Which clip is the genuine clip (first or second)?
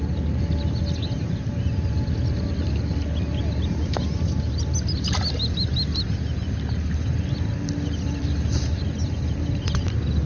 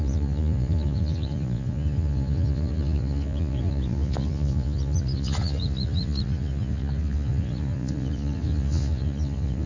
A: first